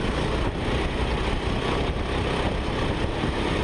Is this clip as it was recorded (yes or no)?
yes